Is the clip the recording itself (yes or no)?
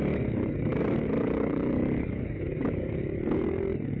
no